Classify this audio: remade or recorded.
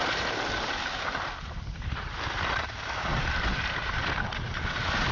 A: remade